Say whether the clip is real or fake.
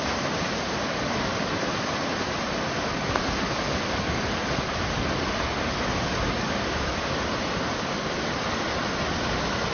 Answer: real